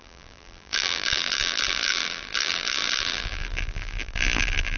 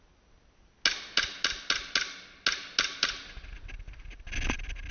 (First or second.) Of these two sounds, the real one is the second